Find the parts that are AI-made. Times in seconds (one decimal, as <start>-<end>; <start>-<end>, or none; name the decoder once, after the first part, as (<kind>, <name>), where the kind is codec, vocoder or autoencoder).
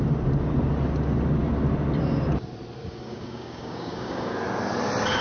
2.8-4.3 (codec, DAC)